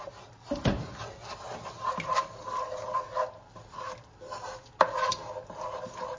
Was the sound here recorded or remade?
recorded